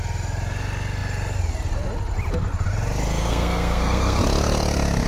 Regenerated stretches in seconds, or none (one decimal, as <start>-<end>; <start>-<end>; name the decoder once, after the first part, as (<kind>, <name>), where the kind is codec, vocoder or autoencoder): 3.2-4.2 (codec, SNAC)